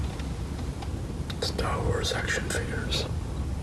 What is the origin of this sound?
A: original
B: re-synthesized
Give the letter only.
A